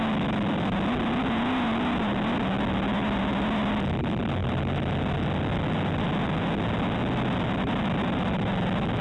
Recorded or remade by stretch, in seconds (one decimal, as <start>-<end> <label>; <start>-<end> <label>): 0.0-9.0 recorded